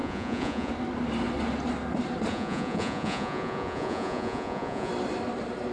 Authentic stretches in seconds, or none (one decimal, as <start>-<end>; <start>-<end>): 0.7-2.3; 4.9-5.7